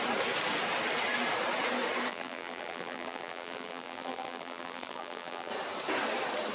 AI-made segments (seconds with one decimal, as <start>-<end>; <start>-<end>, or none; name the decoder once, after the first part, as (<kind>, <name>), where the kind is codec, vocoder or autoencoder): 2.1-5.5 (vocoder, BigVGAN v2)